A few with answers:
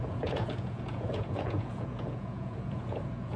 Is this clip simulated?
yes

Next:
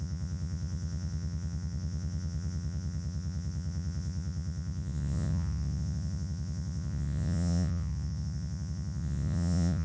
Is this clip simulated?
yes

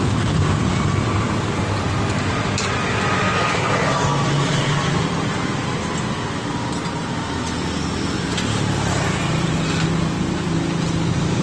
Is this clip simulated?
no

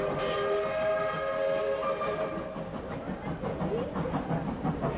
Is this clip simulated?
no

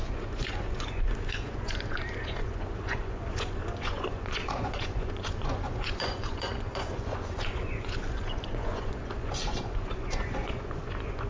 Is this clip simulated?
yes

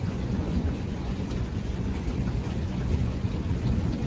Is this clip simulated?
yes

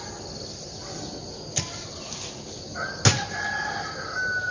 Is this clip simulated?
no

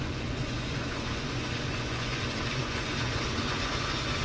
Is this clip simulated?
yes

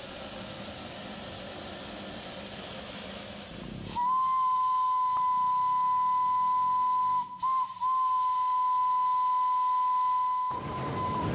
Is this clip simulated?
no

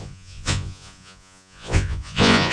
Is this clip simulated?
yes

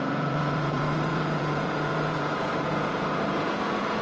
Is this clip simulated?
yes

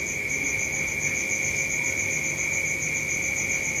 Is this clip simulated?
no